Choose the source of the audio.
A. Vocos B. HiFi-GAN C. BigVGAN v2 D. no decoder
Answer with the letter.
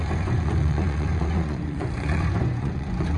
A